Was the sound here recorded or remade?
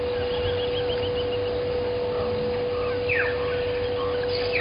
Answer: recorded